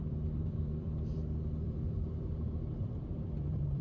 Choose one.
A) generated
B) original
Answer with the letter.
A